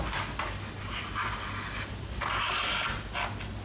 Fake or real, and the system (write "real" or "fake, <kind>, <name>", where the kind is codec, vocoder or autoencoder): real